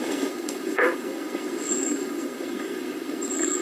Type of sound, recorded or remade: remade